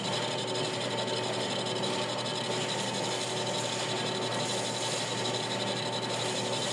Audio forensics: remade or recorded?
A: recorded